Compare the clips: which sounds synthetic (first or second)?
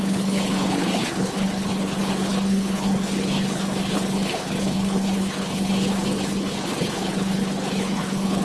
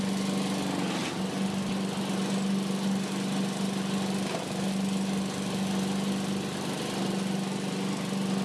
first